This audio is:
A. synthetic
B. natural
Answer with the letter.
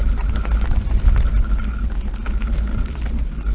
B